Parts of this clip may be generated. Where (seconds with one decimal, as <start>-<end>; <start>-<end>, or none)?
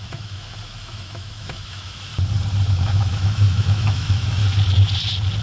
0.0-2.1; 2.7-4.4